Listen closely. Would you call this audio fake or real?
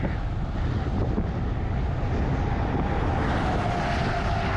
real